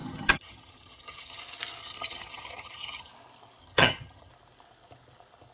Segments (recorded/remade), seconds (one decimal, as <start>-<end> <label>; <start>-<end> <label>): 0.0-1.4 remade; 1.4-1.8 recorded; 1.8-3.1 remade; 3.1-3.6 recorded; 3.6-4.3 remade; 4.3-5.5 recorded